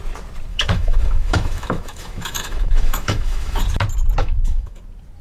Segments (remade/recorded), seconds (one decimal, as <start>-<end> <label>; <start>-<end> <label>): 0.0-0.5 recorded; 0.5-3.6 remade; 3.6-4.2 recorded; 4.2-4.8 remade; 4.8-5.2 recorded